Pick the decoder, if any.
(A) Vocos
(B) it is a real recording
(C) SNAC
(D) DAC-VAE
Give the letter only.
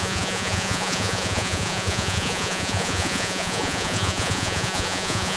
A